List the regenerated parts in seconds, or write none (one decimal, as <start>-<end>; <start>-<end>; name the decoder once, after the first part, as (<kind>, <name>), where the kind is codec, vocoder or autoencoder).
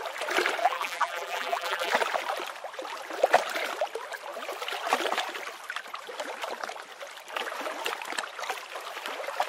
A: 0.6-1.9 (vocoder, BigVGAN v2)